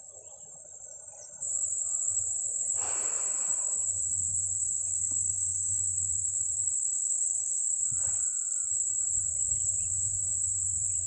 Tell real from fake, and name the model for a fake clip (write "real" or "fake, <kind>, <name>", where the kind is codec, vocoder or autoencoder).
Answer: fake, vocoder, BigVGAN v2